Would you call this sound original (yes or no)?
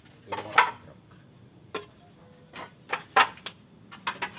yes